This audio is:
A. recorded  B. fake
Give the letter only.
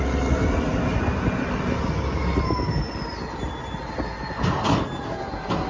A